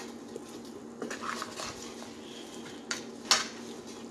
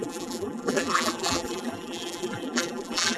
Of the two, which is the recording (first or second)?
first